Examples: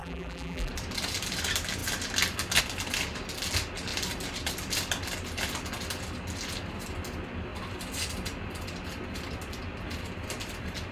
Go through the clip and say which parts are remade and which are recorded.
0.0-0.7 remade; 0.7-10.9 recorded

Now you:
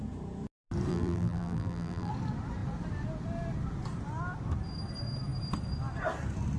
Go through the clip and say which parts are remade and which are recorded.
0.0-0.9 recorded; 0.9-2.1 remade; 2.1-6.6 recorded

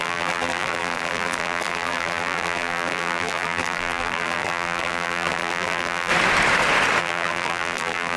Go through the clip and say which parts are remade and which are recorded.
0.0-6.1 remade; 6.1-7.0 recorded; 7.0-8.2 remade

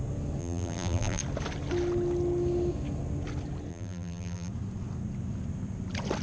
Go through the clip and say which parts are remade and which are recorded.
0.0-0.4 recorded; 0.4-1.2 remade; 1.2-3.7 recorded; 3.7-4.5 remade; 4.5-6.2 recorded